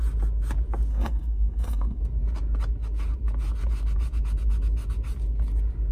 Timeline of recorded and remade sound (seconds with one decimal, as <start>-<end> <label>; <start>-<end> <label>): 0.0-0.9 recorded; 0.9-2.0 remade; 2.0-5.9 recorded